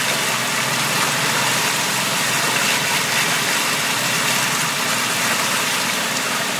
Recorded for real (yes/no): no